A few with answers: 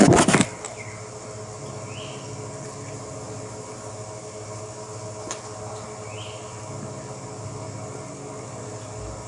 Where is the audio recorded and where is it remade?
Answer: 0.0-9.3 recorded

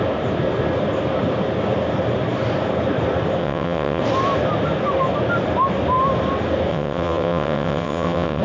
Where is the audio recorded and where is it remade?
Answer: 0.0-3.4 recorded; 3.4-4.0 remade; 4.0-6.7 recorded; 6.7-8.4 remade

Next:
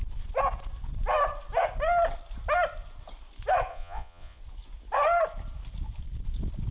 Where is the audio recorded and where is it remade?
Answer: 0.0-3.7 recorded; 3.7-4.4 remade; 4.4-6.7 recorded